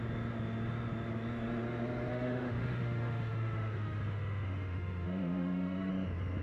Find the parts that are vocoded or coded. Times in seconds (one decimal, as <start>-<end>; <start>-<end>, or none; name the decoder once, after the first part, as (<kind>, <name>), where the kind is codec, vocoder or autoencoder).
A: 2.1-5.9 (autoencoder, DAC-VAE)